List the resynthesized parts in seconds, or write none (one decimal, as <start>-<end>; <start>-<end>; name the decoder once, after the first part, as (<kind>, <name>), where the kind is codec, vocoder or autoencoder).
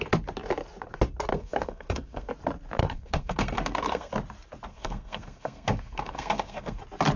1.3-2.3 (codec, SNAC); 2.8-4.1; 4.7-6.8